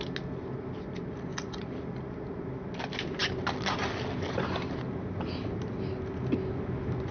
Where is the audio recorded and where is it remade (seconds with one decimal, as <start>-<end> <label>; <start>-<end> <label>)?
0.0-1.3 recorded; 1.3-2.1 remade; 2.1-7.1 recorded